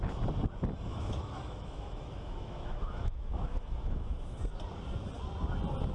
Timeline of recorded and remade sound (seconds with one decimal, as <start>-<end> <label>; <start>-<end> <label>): 0.0-0.9 recorded; 0.9-4.4 remade; 4.4-5.9 recorded